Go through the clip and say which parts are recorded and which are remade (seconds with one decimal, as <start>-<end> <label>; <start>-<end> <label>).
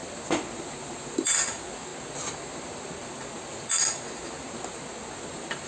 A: 0.0-0.6 recorded; 0.6-1.9 remade; 1.9-5.3 recorded; 5.3-5.7 remade